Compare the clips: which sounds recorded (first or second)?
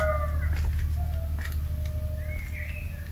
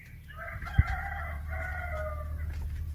first